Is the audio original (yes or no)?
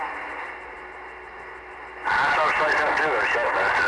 yes